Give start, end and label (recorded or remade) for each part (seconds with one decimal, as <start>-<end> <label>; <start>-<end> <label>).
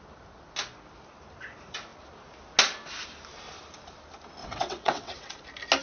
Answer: 0.0-4.4 recorded; 4.4-5.3 remade; 5.3-5.8 recorded